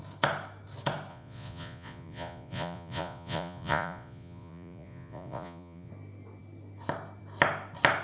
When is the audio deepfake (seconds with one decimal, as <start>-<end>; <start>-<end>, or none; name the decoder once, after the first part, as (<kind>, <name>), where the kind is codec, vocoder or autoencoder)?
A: 1.1-5.9 (vocoder, Vocos)